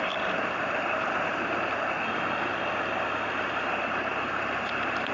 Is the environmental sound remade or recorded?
remade